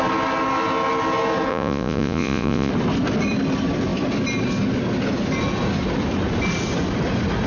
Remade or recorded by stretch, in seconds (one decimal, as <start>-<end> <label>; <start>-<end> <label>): 0.0-1.5 recorded; 1.5-2.7 remade; 2.7-7.5 recorded